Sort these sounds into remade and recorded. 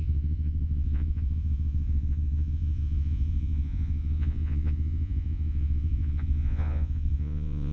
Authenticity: remade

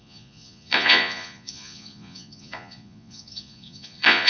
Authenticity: remade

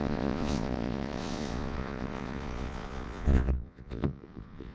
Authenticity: remade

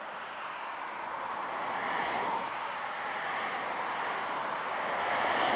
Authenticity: recorded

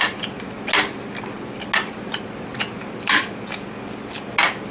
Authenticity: recorded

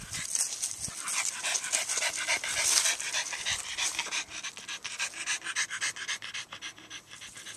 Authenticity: recorded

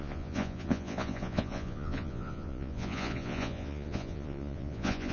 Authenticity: remade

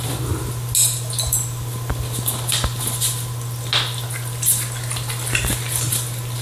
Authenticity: recorded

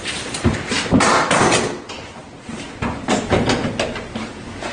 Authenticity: recorded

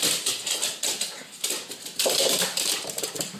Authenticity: recorded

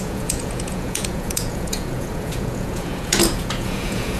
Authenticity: remade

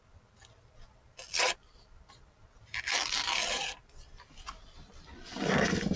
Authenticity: recorded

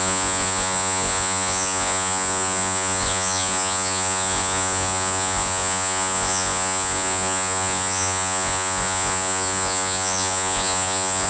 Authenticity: remade